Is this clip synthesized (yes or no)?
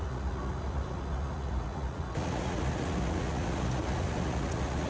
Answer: yes